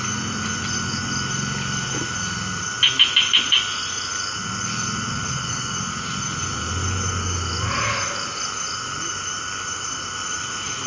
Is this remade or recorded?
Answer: recorded